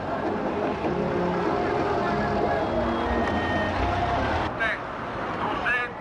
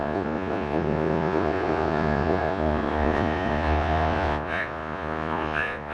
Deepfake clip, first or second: second